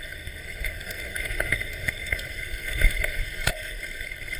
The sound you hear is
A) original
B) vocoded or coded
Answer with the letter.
B